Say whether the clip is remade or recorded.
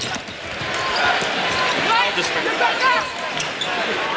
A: recorded